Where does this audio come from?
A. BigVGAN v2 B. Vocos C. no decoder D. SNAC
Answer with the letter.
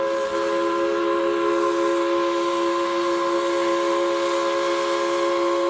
C